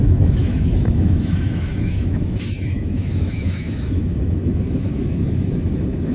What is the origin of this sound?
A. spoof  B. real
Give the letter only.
A